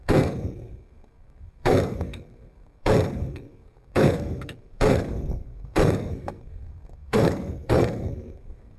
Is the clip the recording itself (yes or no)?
no